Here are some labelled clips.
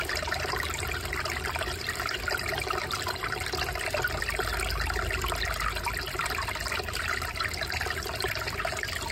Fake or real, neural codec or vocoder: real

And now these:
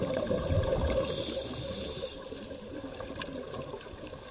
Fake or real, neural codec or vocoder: real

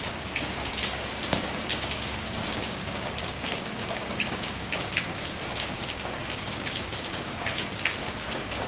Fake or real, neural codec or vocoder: fake, codec, DAC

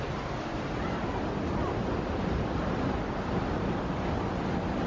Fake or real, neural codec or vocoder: real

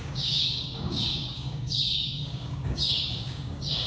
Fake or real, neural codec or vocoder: fake, codec, DAC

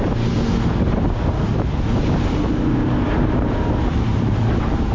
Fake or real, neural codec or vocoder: fake, vocoder, BigVGAN v2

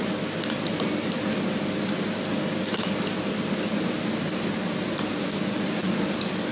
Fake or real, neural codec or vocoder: real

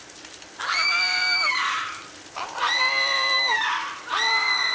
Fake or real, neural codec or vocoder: fake, vocoder, BigVGAN v2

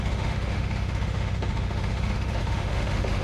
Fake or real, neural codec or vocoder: fake, autoencoder, DAC-VAE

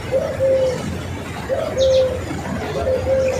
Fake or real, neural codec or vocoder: real